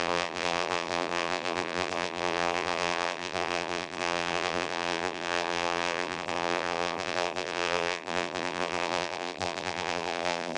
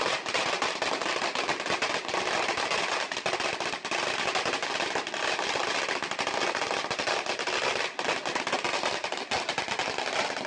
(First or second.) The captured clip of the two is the second